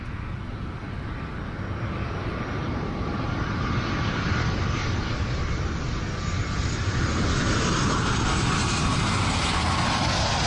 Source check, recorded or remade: recorded